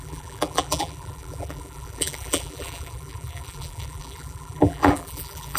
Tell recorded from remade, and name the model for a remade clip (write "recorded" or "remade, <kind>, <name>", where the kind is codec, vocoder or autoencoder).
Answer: remade, vocoder, BigVGAN v2